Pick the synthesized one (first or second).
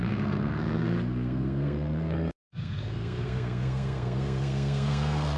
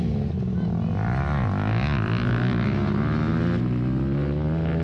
first